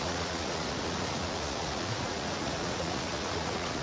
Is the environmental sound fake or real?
fake